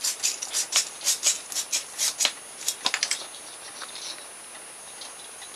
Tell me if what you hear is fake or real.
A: real